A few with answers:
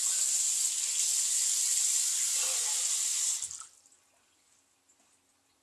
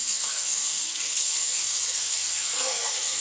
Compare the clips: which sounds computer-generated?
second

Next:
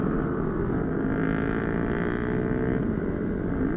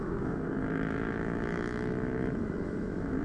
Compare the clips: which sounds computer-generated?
second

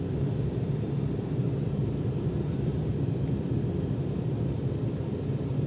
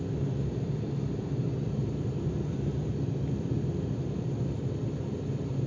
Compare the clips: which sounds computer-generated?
first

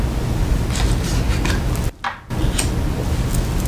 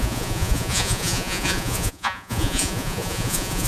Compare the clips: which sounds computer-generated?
second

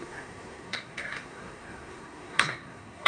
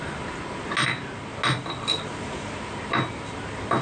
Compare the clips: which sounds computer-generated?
first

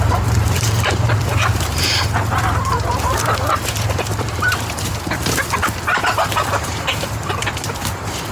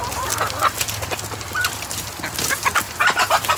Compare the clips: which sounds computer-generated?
first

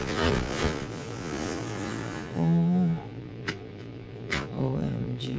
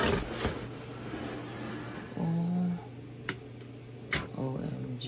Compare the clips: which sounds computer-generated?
first